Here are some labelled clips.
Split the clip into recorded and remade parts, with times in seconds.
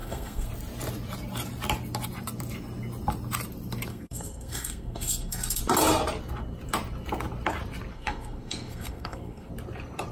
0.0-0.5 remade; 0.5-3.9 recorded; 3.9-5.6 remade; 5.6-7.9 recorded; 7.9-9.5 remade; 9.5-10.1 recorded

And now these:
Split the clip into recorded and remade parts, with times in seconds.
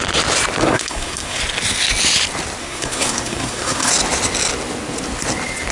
0.0-0.7 recorded; 0.7-1.4 remade; 1.4-2.6 recorded; 2.6-3.9 remade; 3.9-5.7 recorded